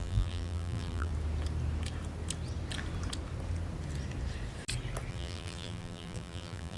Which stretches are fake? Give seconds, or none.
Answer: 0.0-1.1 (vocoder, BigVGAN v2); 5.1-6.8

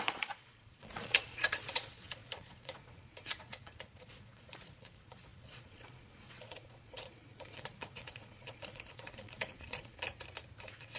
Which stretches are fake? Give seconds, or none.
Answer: 0.0-10.1 (vocoder, Vocos); 10.6-11.0

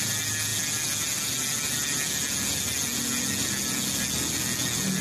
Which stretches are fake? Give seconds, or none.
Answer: none

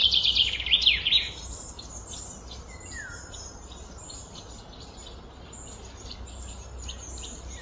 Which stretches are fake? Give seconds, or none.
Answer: none

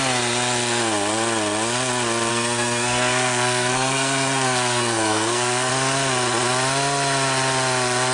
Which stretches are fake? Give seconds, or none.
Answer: 2.3-5.7 (codec, SNAC)

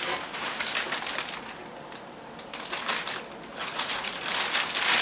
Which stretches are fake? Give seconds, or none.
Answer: 3.6-4.2 (vocoder, Vocos)

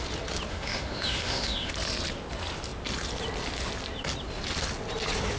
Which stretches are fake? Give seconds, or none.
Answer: 0.5-1.7 (autoencoder, DAC-VAE)

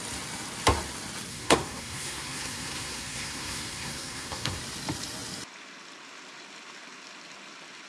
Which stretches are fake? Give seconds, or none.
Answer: 1.3-4.6 (codec, SNAC)